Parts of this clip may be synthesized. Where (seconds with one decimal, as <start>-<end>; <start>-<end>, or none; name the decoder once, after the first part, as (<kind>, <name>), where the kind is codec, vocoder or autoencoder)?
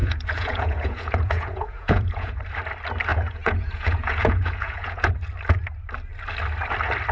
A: 0.0-2.4 (vocoder, Vocos); 3.1-5.1